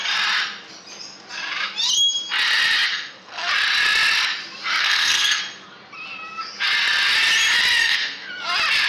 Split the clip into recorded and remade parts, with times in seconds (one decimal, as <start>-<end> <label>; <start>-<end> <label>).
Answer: 0.0-2.9 recorded; 2.9-3.5 remade; 3.5-4.8 recorded; 4.8-5.4 remade; 5.4-7.8 recorded; 7.8-8.3 remade; 8.3-8.9 recorded